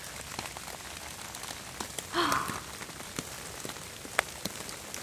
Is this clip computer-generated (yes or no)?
no